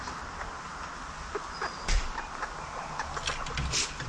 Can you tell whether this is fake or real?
real